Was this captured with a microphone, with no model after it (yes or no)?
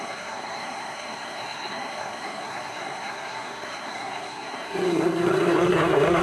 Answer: no